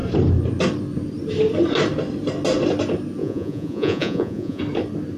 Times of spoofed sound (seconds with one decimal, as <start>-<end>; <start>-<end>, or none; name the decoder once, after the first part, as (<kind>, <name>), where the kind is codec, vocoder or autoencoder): 3.2-4.6 (vocoder, Vocos)